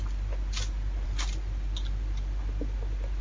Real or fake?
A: real